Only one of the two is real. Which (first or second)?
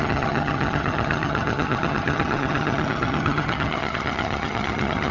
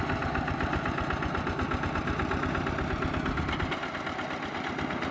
second